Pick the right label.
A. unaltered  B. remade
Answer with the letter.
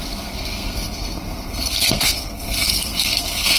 B